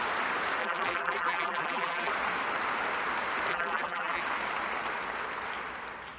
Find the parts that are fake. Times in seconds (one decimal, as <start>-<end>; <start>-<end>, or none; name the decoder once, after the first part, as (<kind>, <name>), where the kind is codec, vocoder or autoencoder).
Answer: 0.6-2.1 (vocoder, BigVGAN v2); 3.5-4.2